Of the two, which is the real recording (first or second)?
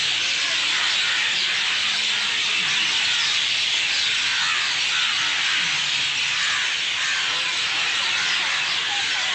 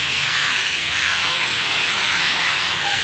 first